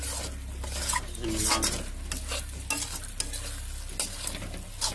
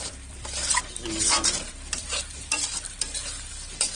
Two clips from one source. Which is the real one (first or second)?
first